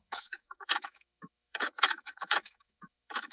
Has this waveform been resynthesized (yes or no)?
yes